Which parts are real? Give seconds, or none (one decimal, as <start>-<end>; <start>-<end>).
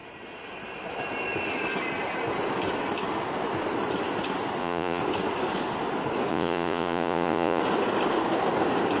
0.0-4.6; 5.0-6.3; 7.6-9.0